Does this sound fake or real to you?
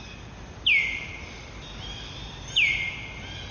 real